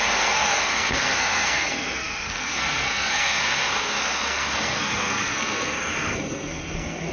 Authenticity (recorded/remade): remade